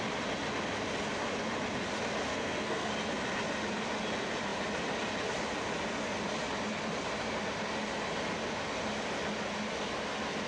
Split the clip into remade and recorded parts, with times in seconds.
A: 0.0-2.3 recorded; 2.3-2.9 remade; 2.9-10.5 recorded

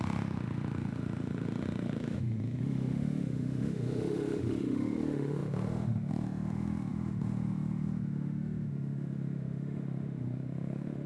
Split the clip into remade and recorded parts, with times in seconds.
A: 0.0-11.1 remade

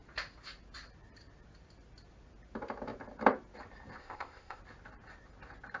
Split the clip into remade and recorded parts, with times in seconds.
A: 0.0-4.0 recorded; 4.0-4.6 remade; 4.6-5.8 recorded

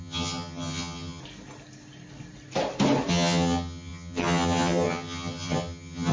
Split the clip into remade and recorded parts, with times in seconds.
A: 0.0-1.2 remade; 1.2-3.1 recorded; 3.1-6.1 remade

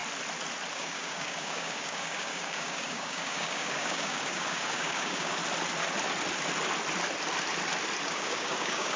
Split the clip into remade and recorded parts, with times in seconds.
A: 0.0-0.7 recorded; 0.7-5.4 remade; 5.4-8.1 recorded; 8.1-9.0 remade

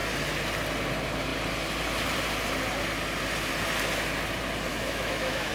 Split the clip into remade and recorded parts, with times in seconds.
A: 0.0-4.7 recorded; 4.7-5.5 remade

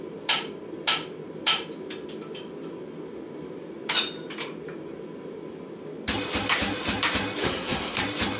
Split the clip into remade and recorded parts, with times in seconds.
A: 0.0-7.4 recorded; 7.4-8.0 remade; 8.0-8.4 recorded